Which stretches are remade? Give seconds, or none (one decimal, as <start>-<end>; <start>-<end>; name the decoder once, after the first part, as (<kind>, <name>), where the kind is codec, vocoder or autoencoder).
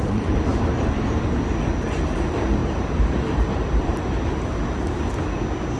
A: 0.5-1.4 (vocoder, BigVGAN v2); 2.6-5.0